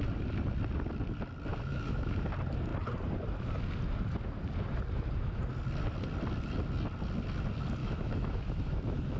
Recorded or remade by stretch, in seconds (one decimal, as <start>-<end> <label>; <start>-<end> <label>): 0.0-1.5 recorded; 1.5-2.2 remade; 2.2-7.8 recorded; 7.8-9.2 remade